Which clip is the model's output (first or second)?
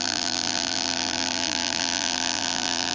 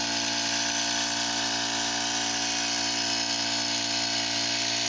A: first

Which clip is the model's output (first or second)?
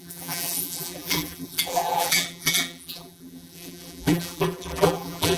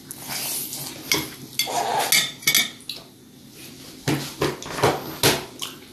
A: first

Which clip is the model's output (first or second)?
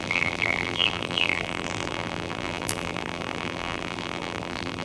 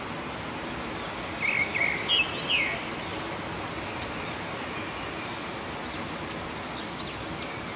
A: first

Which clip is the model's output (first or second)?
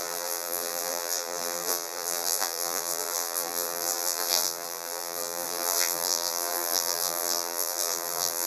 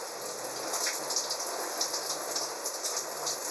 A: first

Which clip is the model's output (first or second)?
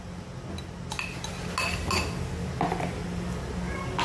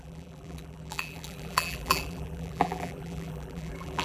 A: second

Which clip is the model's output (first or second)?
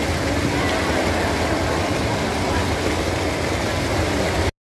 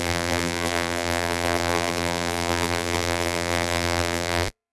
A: second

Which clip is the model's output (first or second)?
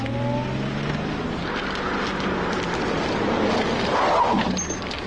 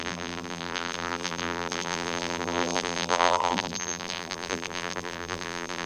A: second